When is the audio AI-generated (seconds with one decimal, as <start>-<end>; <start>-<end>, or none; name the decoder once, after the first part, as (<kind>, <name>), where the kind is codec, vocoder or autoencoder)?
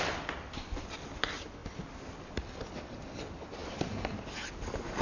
none